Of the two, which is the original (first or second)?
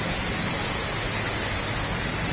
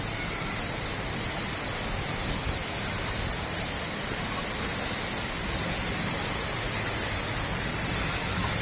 first